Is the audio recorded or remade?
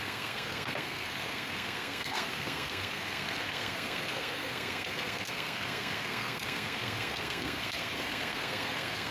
remade